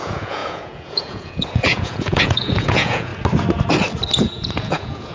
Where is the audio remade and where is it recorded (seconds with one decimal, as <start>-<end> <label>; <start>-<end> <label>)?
0.0-3.1 remade; 3.1-4.2 recorded; 4.2-5.1 remade